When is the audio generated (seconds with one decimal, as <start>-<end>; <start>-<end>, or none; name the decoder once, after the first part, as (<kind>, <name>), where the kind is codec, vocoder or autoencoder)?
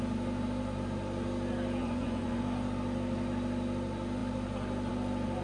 1.8-2.4 (vocoder, Vocos)